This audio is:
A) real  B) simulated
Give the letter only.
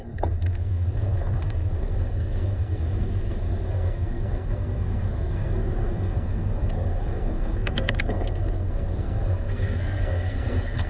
B